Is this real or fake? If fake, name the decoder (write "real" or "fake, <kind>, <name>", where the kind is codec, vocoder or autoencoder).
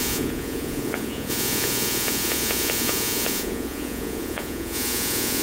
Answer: fake, vocoder, Vocos